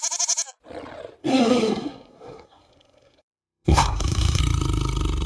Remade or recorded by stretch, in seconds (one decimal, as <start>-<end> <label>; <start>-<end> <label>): 0.0-1.2 recorded; 1.2-4.4 remade; 4.4-5.3 recorded